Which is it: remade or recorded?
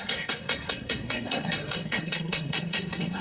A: remade